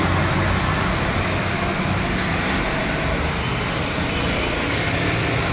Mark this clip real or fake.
real